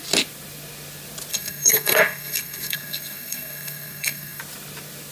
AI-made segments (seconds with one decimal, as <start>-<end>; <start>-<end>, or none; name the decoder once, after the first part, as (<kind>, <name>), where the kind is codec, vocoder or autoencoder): 1.3-4.4 (codec, SNAC)